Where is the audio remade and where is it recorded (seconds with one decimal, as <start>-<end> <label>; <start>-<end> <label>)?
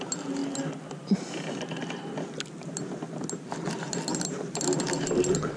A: 0.0-5.6 recorded